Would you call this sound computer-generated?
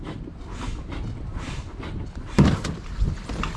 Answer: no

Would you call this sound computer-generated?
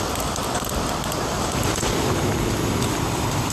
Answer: no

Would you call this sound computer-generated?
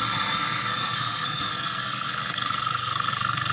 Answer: yes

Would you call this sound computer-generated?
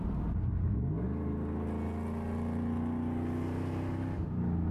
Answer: no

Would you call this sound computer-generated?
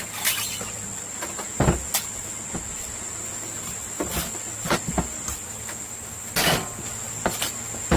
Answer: no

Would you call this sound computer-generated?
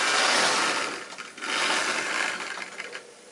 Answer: no